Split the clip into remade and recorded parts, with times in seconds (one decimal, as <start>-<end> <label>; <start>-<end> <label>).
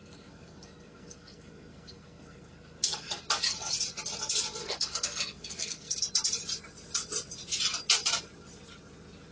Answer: 0.0-3.2 remade; 3.2-4.6 recorded; 4.6-6.0 remade; 6.0-9.3 recorded